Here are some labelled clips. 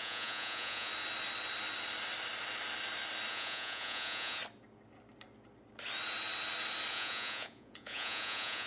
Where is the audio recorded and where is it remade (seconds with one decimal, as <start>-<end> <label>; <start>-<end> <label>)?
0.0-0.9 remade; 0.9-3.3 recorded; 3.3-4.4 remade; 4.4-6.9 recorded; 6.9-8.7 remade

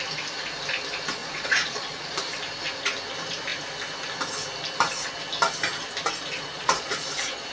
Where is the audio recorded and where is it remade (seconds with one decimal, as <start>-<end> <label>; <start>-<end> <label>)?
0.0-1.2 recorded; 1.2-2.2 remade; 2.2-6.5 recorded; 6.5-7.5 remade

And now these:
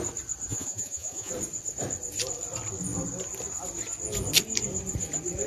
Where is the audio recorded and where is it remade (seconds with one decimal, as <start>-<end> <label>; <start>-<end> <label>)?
0.0-0.5 recorded; 0.5-1.3 remade; 1.3-5.5 recorded